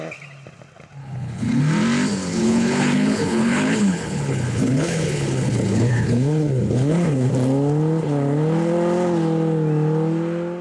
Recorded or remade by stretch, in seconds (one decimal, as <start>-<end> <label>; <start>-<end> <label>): 0.0-1.0 recorded; 1.0-1.6 remade; 1.6-2.3 recorded; 2.3-7.3 remade; 7.3-10.6 recorded